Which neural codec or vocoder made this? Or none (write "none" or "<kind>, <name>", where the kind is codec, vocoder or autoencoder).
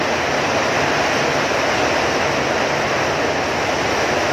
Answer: none